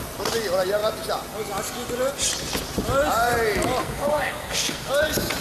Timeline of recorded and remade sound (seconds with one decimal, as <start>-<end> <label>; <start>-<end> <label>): 0.0-3.8 recorded; 3.8-4.9 remade; 4.9-5.4 recorded